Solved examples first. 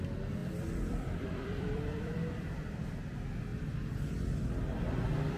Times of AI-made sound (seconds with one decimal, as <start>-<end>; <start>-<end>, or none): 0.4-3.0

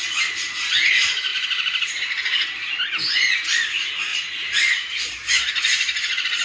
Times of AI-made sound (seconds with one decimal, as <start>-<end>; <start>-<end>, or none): none

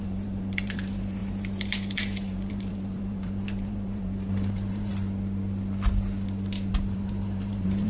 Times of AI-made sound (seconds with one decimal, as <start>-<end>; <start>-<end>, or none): 0.0-4.9; 6.7-7.9